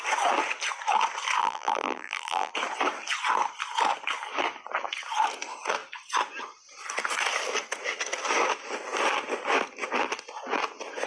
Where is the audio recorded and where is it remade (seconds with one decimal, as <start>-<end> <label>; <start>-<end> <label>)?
0.0-1.4 recorded; 1.4-2.5 remade; 2.5-11.1 recorded

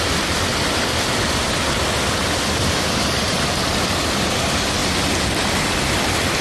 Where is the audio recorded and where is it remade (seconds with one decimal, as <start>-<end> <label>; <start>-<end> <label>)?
0.0-6.4 recorded

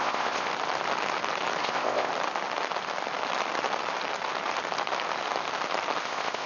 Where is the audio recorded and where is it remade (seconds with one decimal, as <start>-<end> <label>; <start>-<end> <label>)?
0.0-0.5 remade; 0.5-1.6 recorded; 1.6-2.1 remade; 2.1-6.0 recorded; 6.0-6.5 remade

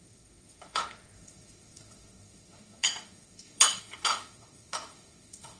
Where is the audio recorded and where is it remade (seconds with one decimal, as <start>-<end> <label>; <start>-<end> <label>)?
0.0-5.6 remade

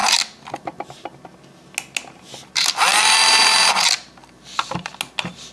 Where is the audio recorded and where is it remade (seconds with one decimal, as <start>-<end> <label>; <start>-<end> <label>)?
0.0-4.2 recorded; 4.2-4.9 remade; 4.9-5.5 recorded

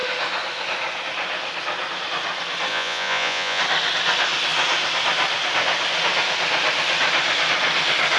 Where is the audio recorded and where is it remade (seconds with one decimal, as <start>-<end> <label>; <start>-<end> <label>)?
0.0-2.7 recorded; 2.7-3.6 remade; 3.6-8.2 recorded